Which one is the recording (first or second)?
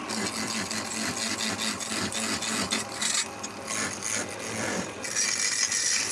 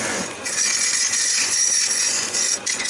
first